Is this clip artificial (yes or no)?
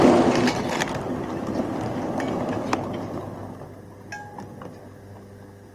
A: no